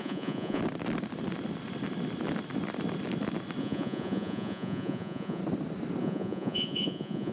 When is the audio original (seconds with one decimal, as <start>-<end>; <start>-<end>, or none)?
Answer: 0.6-3.6; 5.4-6.0